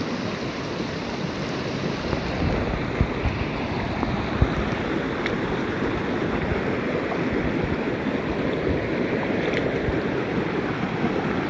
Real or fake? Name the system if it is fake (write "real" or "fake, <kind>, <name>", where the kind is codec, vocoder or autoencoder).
real